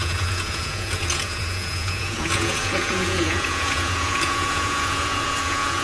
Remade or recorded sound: remade